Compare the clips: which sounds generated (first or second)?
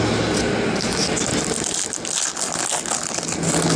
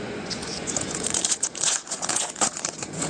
second